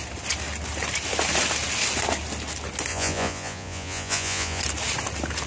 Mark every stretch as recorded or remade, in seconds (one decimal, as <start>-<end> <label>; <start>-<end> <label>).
0.0-2.9 recorded; 2.9-4.6 remade; 4.6-5.5 recorded